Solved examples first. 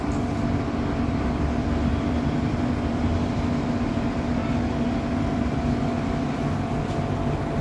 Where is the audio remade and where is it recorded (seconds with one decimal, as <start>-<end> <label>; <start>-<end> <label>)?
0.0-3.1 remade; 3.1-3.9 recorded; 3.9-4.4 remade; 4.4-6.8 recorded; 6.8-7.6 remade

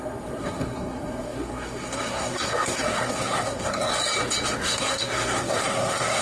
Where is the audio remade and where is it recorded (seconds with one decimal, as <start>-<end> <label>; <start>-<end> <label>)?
0.0-3.9 remade; 3.9-4.6 recorded; 4.6-6.2 remade

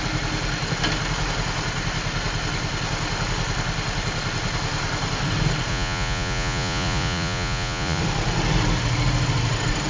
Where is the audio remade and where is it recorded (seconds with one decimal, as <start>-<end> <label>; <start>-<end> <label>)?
0.0-5.7 recorded; 5.7-8.0 remade; 8.0-9.9 recorded

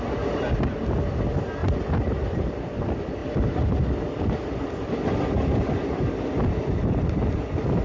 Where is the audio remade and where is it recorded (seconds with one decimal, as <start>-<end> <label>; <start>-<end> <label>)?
0.0-1.6 recorded; 1.6-2.8 remade; 2.8-7.8 recorded

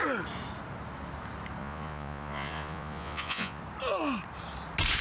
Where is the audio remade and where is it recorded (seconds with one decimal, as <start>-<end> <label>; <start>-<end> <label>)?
0.0-1.6 recorded; 1.6-3.6 remade; 3.6-5.0 recorded

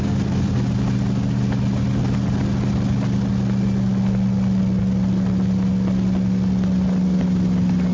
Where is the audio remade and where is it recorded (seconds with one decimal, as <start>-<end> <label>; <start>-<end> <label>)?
0.0-7.9 recorded

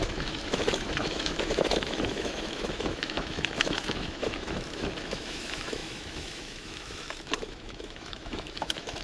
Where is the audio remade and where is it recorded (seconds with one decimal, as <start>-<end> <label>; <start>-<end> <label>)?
0.0-9.0 remade